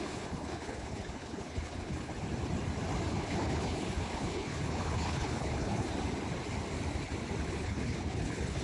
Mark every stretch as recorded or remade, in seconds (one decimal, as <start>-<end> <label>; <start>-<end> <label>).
0.0-2.1 remade; 2.1-3.1 recorded; 3.1-5.9 remade; 5.9-7.5 recorded; 7.5-8.6 remade